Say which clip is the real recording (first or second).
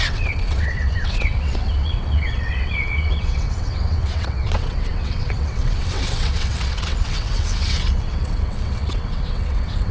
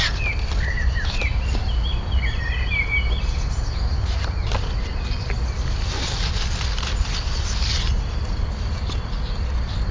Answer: second